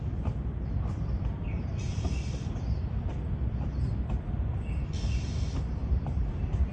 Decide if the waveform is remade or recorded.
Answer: recorded